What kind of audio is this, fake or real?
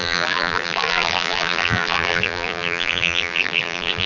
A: fake